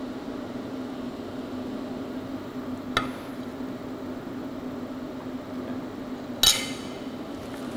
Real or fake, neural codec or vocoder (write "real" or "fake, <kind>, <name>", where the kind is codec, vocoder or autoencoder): real